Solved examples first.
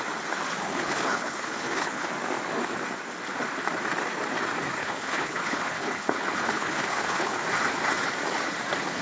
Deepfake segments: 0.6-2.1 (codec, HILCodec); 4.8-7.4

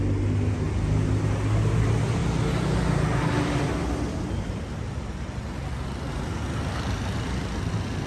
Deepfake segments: none

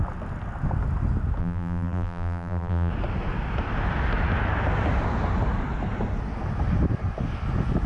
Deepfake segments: 1.4-2.9 (vocoder, BigVGAN v2)

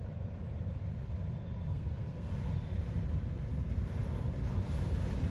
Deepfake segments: 1.7-2.3 (codec, SNAC)

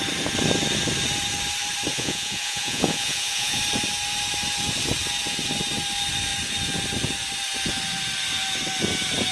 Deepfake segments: 1.9-3.6 (vocoder, Vocos)

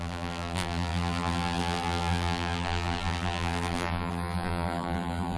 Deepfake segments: 0.0-5.4 (vocoder, BigVGAN v2)

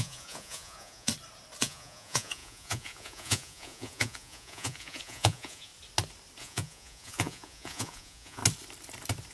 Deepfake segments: 0.0-1.1 (vocoder, Vocos); 1.6-5.7; 6.4-8.4

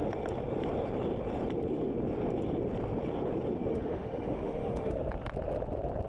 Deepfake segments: 3.7-5.0 (autoencoder, DAC-VAE)